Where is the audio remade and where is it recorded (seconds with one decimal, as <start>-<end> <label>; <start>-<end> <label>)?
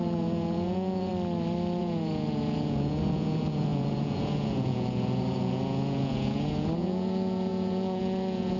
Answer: 0.0-1.1 remade; 1.1-1.8 recorded; 1.8-8.6 remade